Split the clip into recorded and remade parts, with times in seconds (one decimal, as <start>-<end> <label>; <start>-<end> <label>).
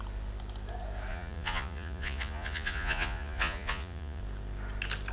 0.0-1.1 recorded; 1.1-4.2 remade; 4.2-5.1 recorded